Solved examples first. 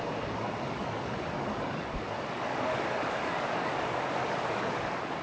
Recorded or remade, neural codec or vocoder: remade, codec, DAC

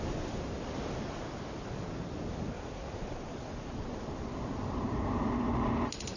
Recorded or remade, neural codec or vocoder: recorded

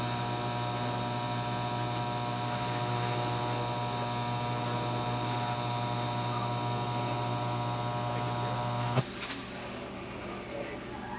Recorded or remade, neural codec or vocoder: recorded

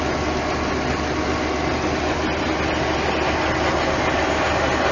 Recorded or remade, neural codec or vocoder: recorded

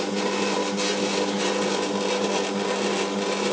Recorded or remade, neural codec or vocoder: recorded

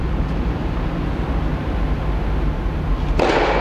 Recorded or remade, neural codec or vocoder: recorded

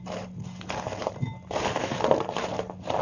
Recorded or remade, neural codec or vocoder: recorded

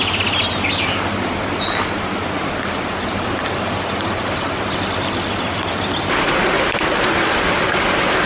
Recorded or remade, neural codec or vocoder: recorded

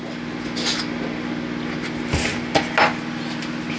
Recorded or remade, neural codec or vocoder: recorded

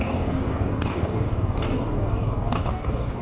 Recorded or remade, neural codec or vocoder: remade, codec, DAC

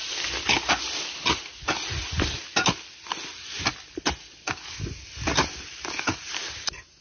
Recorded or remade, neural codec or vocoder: recorded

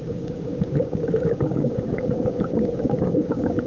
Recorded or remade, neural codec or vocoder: remade, codec, DAC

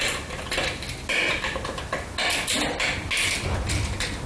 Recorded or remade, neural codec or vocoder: recorded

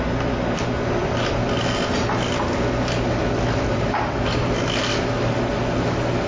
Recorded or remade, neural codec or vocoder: recorded